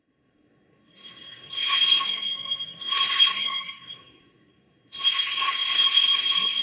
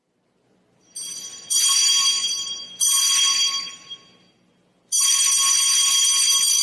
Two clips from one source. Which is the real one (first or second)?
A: second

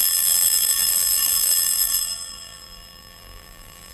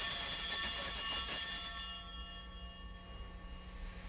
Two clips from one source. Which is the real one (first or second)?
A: second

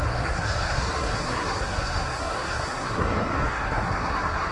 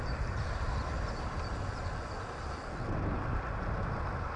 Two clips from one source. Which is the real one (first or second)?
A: second